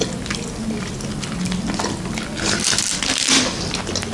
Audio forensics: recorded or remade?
recorded